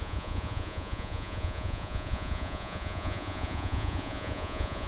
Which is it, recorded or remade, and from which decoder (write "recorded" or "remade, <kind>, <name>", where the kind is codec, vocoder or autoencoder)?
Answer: remade, vocoder, Vocos